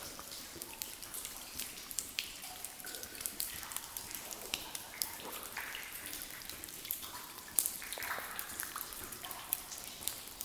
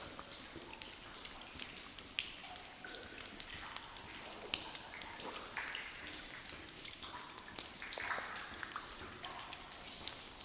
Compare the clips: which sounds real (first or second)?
second